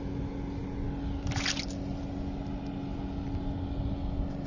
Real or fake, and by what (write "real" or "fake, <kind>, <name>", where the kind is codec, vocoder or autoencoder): real